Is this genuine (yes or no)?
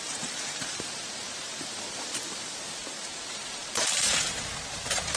no